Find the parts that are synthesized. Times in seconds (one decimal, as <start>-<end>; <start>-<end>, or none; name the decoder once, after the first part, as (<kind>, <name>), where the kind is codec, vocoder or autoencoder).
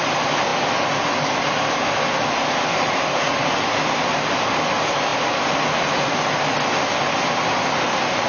none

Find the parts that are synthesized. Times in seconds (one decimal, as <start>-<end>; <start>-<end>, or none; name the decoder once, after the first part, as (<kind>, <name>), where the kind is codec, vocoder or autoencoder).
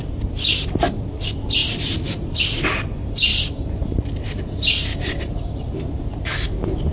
1.6-2.2 (vocoder, BigVGAN v2); 4.9-6.3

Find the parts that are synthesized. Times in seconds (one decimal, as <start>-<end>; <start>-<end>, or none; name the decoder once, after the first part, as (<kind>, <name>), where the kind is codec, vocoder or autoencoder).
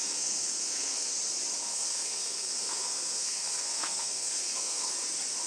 0.0-1.1 (codec, SNAC); 1.6-4.9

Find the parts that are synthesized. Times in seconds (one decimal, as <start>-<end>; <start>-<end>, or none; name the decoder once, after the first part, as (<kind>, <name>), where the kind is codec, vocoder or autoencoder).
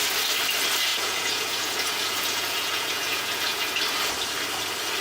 0.9-3.7 (vocoder, Vocos)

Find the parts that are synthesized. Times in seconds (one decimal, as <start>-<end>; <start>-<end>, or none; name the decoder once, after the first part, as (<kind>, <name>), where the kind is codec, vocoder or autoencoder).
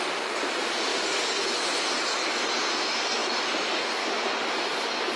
none